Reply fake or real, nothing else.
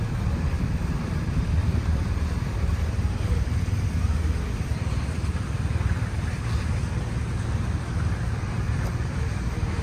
fake